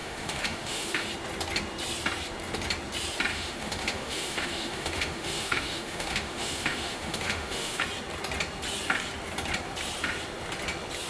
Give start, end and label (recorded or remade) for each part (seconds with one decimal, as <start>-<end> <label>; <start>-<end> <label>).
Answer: 0.0-1.1 remade; 1.1-3.3 recorded; 3.3-7.8 remade; 7.8-11.1 recorded